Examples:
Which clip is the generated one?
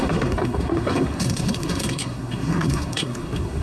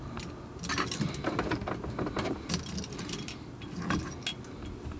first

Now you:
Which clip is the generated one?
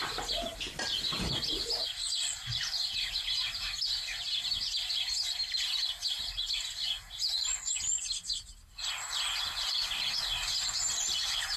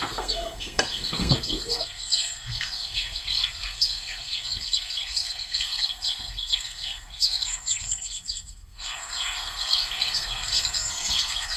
second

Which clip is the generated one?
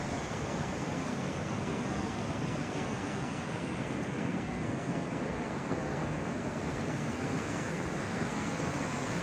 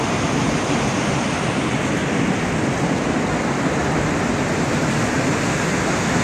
first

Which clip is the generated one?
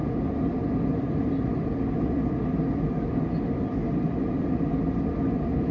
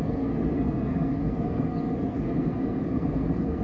second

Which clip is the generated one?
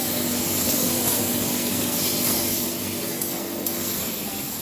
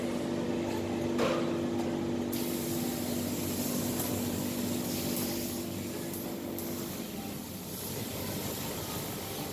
first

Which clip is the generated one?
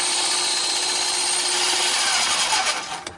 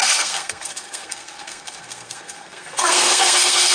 second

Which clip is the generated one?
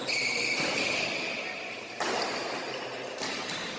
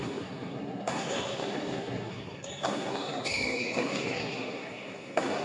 second